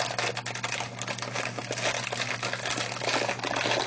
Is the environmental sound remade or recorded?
recorded